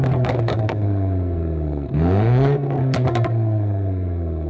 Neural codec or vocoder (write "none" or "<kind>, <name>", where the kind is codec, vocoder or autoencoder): codec, SNAC